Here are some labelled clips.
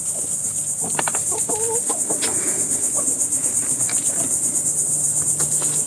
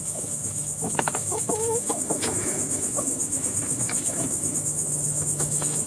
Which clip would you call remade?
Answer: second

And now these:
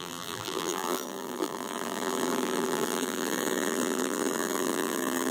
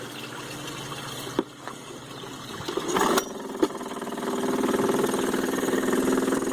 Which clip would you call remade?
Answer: first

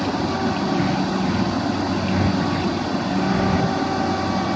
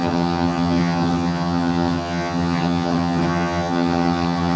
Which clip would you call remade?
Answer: second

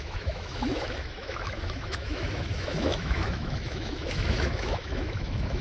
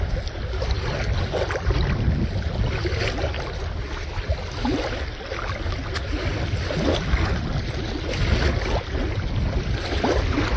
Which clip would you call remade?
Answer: first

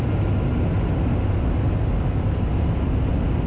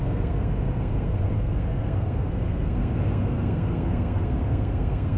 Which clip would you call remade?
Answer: second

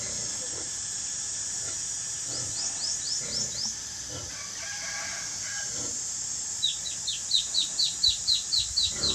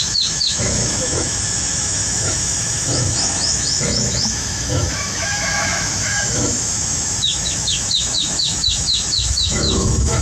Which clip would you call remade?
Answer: second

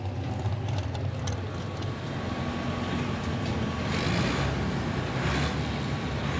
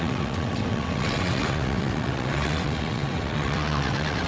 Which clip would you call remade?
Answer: second